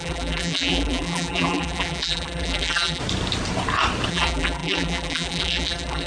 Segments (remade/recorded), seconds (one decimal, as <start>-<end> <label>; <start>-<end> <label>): 0.0-3.0 remade; 3.0-4.1 recorded; 4.1-6.1 remade